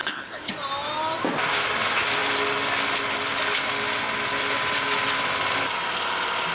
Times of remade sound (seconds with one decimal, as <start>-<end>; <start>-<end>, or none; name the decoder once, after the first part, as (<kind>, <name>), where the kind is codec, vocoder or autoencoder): 0.0-0.5 (codec, HILCodec)